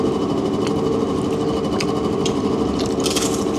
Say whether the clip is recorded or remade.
recorded